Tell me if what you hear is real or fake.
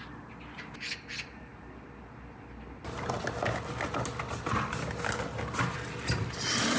real